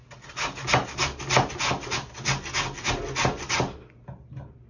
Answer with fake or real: real